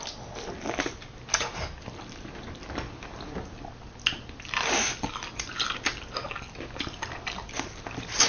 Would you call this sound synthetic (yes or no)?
no